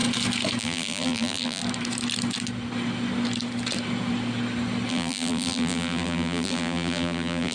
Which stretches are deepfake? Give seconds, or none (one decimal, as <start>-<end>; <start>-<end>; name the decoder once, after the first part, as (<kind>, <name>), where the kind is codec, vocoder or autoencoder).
0.6-1.6 (vocoder, BigVGAN v2); 4.9-7.5